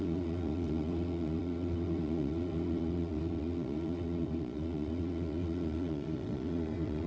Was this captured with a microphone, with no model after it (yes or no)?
no